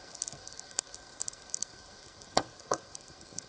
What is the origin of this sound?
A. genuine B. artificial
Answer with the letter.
B